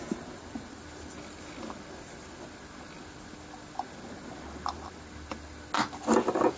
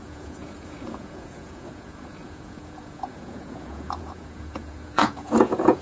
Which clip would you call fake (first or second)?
second